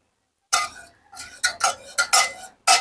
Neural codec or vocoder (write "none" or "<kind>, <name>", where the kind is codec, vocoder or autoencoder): none